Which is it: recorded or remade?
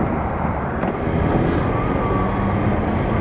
recorded